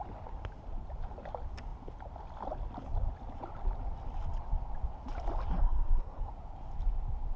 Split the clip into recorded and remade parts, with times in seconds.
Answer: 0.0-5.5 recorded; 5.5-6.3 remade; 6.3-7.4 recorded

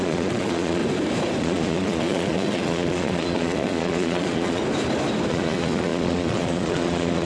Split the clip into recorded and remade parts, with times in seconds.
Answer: 0.0-0.8 remade; 0.8-1.4 recorded; 1.4-4.6 remade; 4.6-5.3 recorded; 5.3-7.3 remade

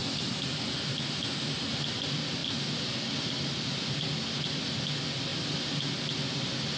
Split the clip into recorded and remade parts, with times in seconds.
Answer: 0.0-6.8 recorded

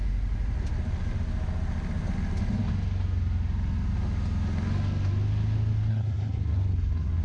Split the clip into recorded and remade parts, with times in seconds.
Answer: 0.0-5.9 recorded; 5.9-7.2 remade

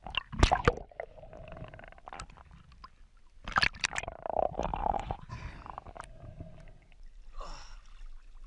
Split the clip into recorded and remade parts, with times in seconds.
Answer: 0.0-4.8 recorded; 4.8-5.4 remade; 5.4-8.5 recorded

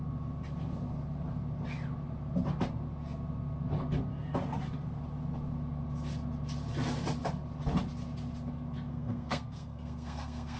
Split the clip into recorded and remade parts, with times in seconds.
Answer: 0.0-8.9 recorded; 8.9-10.6 remade